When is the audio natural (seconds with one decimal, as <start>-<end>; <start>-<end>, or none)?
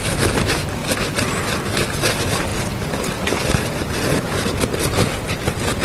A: 0.0-0.8; 1.4-2.5; 4.6-5.8